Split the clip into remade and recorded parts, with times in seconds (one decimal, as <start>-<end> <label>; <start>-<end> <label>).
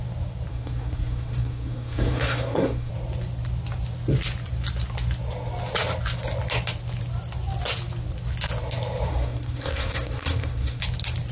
0.0-0.5 recorded; 0.5-2.9 remade; 2.9-9.1 recorded; 9.1-10.8 remade; 10.8-11.3 recorded